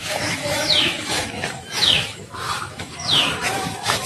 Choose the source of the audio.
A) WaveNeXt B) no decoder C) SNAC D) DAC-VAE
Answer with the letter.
D